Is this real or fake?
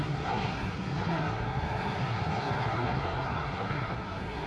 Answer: fake